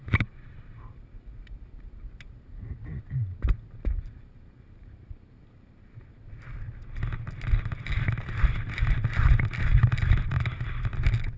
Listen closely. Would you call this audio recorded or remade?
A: recorded